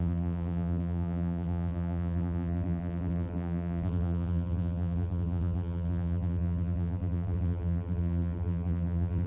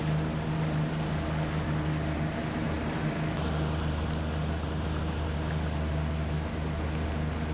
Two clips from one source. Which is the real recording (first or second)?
second